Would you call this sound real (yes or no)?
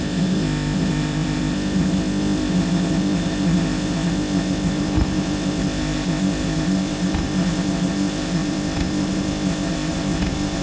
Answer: no